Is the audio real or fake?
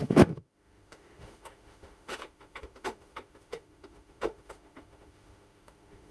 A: fake